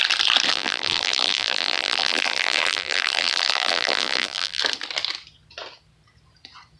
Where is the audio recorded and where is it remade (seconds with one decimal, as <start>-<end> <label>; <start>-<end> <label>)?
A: 0.0-0.5 recorded; 0.5-4.6 remade; 4.6-6.8 recorded